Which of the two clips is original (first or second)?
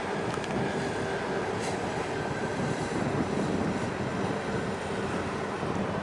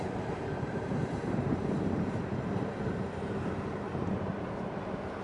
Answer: first